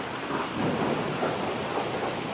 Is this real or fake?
real